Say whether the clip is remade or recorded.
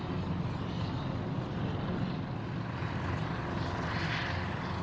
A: recorded